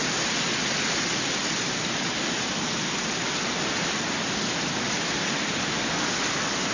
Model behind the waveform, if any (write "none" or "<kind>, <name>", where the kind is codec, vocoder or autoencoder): none